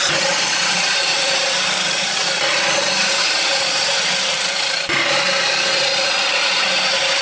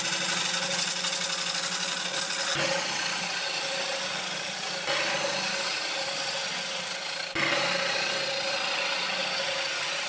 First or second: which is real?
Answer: second